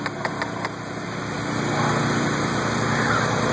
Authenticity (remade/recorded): recorded